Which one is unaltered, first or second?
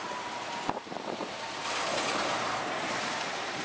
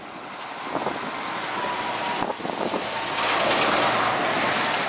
second